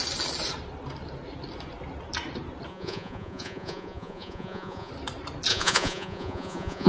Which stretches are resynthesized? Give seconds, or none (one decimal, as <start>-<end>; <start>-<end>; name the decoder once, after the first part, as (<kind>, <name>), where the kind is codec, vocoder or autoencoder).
2.7-4.9 (vocoder, Vocos); 5.5-6.9